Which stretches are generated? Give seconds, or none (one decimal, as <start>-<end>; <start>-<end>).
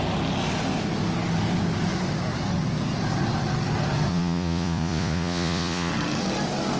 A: 4.1-5.9